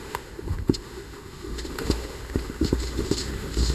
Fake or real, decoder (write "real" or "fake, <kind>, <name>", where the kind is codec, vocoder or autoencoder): fake, autoencoder, DAC-VAE